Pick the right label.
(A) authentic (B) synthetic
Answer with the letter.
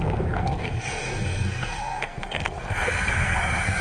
B